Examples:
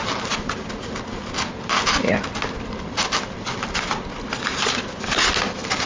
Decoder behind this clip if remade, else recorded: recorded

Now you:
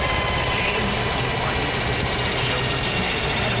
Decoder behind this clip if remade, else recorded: recorded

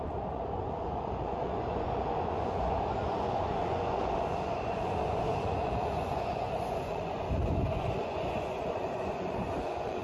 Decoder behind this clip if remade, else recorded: remade, vocoder, Vocos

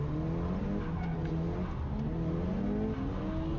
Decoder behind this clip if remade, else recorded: recorded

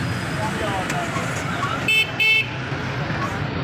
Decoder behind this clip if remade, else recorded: recorded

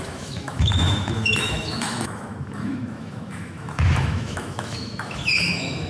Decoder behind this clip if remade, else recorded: remade, autoencoder, DAC-VAE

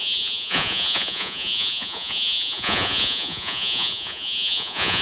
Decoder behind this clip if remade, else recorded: remade, vocoder, Vocos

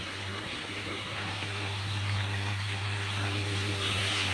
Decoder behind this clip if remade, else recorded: remade, codec, SNAC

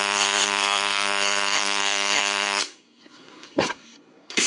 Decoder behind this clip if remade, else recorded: remade, codec, SNAC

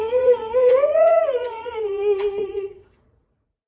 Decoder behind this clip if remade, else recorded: remade, vocoder, Vocos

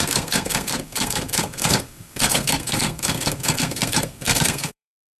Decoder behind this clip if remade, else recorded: remade, codec, SNAC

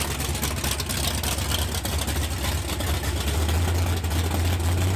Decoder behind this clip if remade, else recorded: recorded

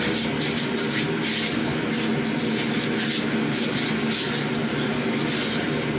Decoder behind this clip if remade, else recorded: recorded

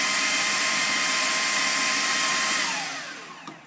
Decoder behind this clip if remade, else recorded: remade, vocoder, BigVGAN v2